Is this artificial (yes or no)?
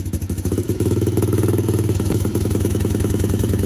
yes